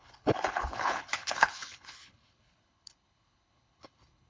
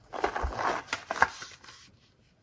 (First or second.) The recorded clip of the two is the second